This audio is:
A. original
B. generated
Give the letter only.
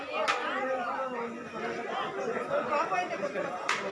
A